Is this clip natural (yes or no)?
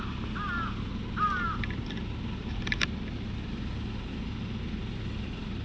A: yes